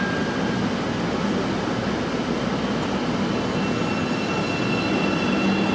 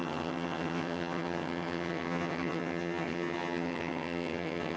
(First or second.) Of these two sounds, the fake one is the second